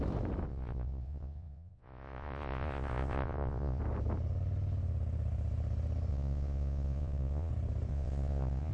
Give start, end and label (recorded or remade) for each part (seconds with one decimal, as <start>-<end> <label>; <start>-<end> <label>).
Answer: 0.0-0.5 recorded; 0.5-3.8 remade; 3.8-6.1 recorded; 6.1-7.5 remade; 7.5-7.9 recorded; 7.9-8.7 remade